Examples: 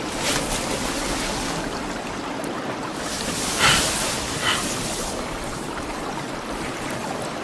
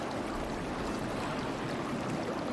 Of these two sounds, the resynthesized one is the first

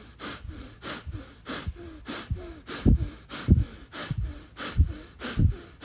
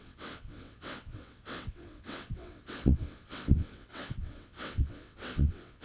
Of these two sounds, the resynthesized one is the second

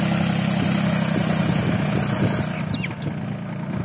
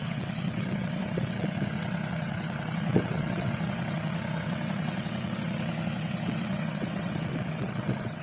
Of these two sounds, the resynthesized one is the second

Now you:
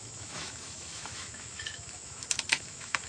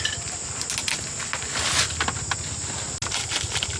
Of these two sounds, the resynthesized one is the first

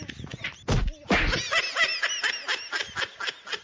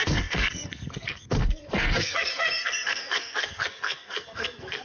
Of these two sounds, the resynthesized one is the second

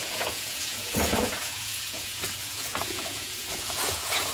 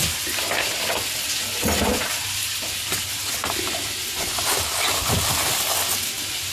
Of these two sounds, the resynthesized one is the first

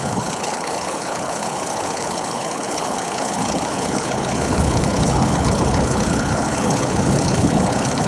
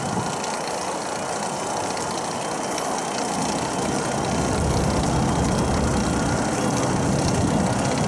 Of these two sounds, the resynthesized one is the first